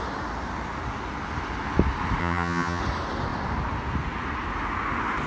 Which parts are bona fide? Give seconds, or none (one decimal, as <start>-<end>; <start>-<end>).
0.0-2.2; 2.8-5.3